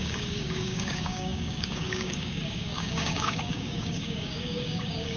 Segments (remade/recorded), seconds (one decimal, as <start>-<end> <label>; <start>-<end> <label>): 0.0-5.2 remade